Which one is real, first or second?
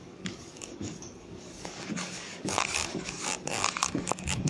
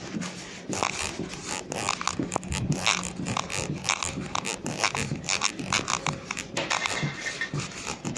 second